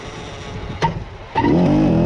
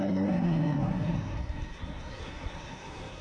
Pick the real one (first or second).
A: first